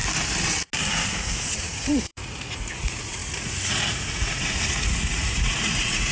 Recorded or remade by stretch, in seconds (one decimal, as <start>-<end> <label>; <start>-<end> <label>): 0.0-0.9 recorded; 0.9-6.1 remade